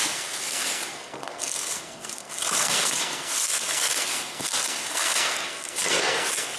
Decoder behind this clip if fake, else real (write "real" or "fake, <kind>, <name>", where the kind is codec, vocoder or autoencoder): fake, codec, SNAC